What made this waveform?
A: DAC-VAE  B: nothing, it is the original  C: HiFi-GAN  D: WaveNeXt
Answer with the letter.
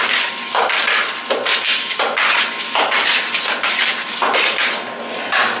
B